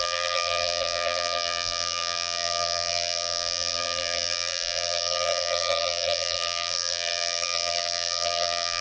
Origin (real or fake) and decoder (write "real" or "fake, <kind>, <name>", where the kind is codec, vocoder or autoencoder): fake, vocoder, BigVGAN v2